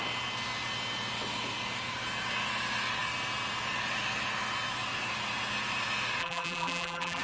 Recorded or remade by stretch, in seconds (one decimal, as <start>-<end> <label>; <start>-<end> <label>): 0.0-6.2 recorded; 6.2-7.2 remade